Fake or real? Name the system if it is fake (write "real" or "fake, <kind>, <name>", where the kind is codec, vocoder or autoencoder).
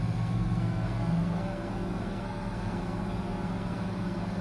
fake, codec, SNAC